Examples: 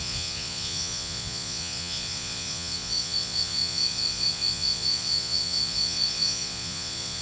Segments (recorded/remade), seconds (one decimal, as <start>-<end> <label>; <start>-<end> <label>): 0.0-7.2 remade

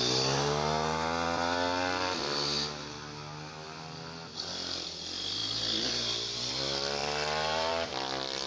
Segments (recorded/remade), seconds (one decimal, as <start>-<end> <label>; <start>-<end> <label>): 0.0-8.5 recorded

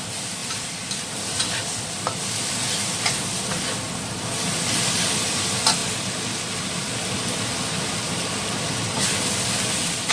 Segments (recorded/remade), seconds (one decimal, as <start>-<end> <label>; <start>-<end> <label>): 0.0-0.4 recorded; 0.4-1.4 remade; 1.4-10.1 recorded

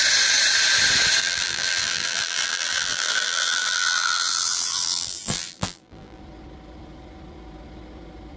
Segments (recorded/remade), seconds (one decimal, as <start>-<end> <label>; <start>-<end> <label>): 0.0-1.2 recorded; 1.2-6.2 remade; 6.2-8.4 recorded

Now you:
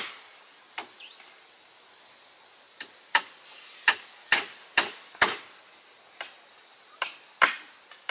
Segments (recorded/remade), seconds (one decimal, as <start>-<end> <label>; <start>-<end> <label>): 0.0-8.1 recorded